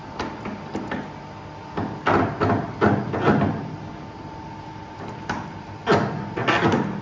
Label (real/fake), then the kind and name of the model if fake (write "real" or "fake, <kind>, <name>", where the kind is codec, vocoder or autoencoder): real